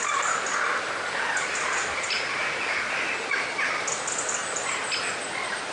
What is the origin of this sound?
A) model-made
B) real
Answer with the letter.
B